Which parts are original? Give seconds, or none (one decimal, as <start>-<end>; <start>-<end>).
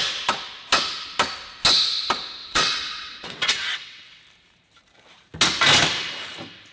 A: 0.0-2.4; 4.2-6.7